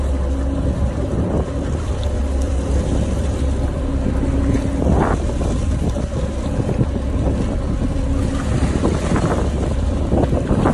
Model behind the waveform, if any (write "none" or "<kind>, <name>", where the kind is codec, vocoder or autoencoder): none